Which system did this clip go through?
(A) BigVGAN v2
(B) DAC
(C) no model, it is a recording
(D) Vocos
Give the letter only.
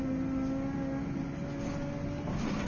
C